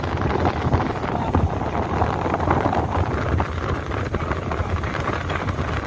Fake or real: fake